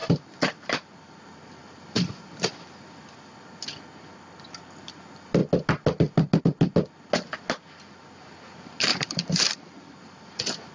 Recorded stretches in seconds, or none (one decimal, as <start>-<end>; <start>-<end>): 3.6-8.9